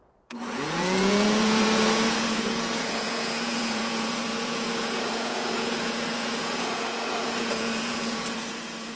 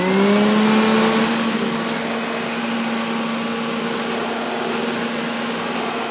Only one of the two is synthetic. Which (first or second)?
first